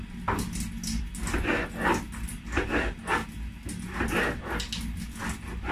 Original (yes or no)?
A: yes